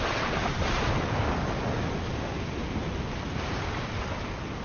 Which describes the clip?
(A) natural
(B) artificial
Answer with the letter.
A